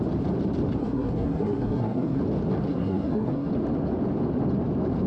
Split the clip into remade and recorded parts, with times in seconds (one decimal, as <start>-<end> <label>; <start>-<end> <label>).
0.0-0.8 recorded; 0.8-2.2 remade; 2.2-2.7 recorded; 2.7-3.5 remade; 3.5-5.1 recorded